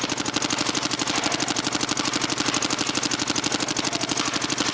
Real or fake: real